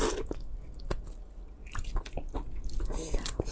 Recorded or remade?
recorded